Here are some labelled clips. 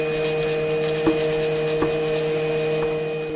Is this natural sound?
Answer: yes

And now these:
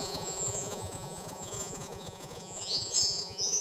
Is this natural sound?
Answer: no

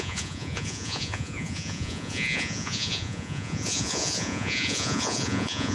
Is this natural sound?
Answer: no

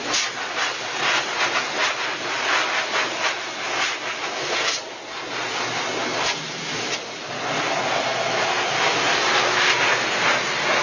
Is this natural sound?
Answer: yes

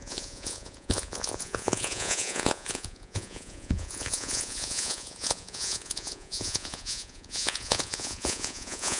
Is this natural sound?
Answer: no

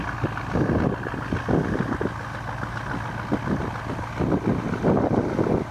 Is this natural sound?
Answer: yes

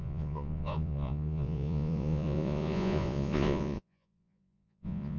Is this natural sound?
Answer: no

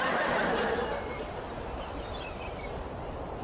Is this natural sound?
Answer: yes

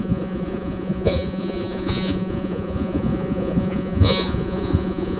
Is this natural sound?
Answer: no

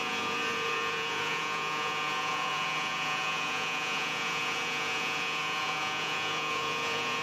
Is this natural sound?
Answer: no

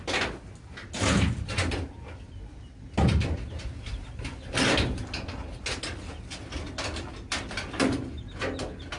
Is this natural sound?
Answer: yes